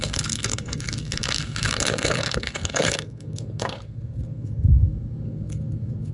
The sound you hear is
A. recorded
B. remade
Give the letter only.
B